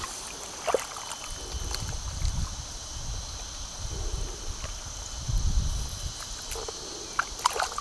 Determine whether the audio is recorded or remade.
recorded